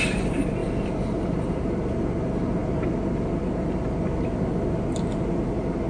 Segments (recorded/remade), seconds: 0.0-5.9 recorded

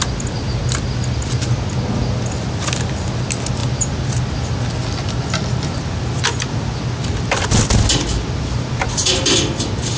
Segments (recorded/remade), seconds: 0.0-10.0 recorded

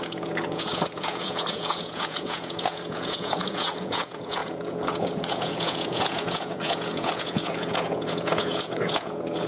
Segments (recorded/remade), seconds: 0.0-9.5 remade

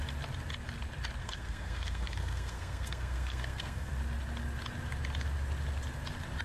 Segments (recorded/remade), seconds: 0.0-1.2 recorded; 1.2-3.9 remade; 3.9-6.4 recorded

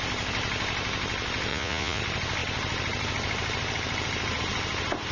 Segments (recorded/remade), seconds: 0.0-1.5 recorded; 1.5-2.0 remade; 2.0-5.1 recorded

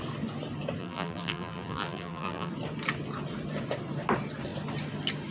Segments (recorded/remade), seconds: 0.0-0.8 recorded; 0.8-2.5 remade; 2.5-5.3 recorded